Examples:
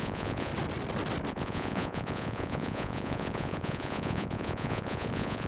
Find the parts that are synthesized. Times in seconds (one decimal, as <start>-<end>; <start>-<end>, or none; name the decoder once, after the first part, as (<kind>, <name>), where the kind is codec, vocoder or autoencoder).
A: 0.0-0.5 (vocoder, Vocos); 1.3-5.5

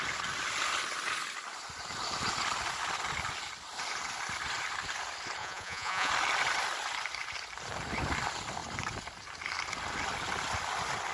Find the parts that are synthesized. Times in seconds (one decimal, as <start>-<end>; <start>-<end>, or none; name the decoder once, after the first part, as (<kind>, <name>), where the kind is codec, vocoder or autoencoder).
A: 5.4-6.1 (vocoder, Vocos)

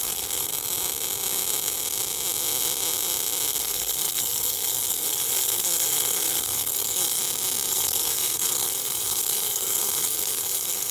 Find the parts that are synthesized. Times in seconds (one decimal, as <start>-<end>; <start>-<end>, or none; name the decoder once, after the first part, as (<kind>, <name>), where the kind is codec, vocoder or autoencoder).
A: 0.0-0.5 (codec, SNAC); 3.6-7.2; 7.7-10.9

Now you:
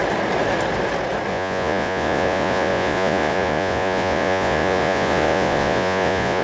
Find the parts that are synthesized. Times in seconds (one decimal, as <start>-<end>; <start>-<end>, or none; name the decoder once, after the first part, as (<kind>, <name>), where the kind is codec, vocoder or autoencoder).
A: 1.3-6.4 (vocoder, Vocos)

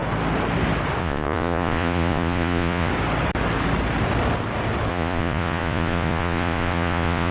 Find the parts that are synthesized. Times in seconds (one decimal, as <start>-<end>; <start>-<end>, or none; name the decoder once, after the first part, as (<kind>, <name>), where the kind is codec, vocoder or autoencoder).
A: 1.0-2.9 (vocoder, Vocos); 4.9-7.3

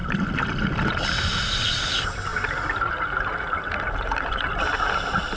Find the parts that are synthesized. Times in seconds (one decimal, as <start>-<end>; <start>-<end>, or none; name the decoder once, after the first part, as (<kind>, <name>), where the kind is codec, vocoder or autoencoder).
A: none